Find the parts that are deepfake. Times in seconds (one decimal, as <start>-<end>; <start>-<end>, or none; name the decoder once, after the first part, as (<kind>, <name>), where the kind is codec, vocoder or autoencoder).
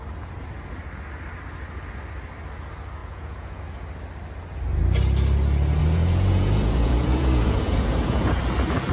3.0-3.6 (vocoder, Vocos); 5.8-8.4